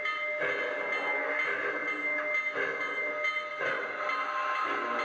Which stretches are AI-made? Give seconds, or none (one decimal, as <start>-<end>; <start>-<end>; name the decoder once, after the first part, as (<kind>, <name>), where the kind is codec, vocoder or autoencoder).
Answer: none